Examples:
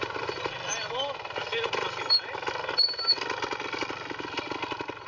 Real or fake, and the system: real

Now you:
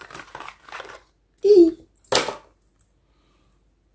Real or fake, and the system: real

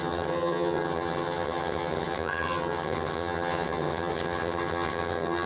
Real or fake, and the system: fake, vocoder, HiFi-GAN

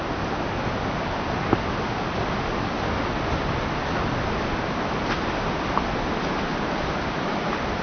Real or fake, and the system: real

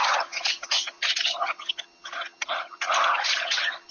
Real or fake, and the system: fake, vocoder, HiFi-GAN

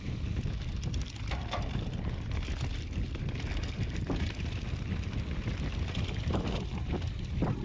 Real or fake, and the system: real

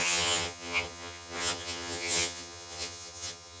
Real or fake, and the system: fake, vocoder, HiFi-GAN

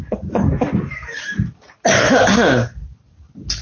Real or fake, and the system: real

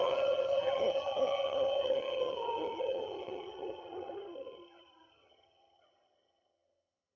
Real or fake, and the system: fake, vocoder, HiFi-GAN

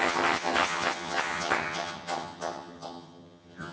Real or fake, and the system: fake, vocoder, HiFi-GAN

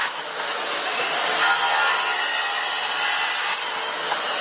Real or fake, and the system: real